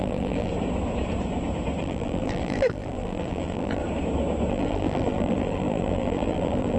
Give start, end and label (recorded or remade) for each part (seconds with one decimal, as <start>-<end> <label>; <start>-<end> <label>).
0.0-0.5 remade; 0.5-1.8 recorded; 1.8-3.8 remade; 3.8-4.5 recorded; 4.5-6.8 remade